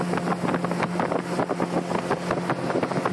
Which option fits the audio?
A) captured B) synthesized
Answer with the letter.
A